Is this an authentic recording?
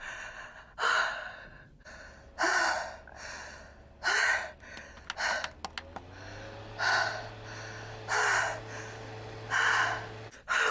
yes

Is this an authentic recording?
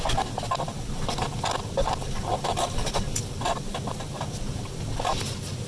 yes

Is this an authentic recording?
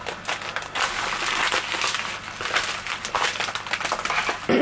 yes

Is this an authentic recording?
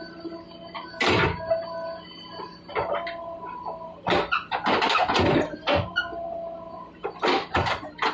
yes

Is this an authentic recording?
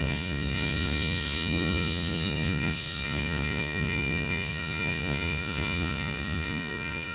no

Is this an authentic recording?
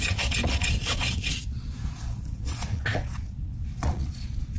no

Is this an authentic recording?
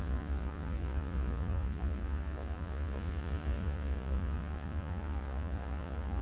no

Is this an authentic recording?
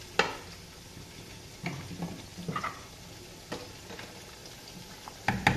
yes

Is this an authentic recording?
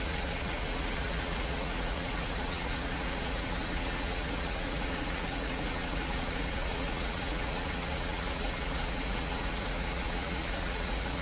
no